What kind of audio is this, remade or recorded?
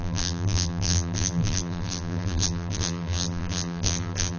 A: remade